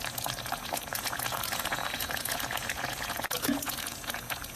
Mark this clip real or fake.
fake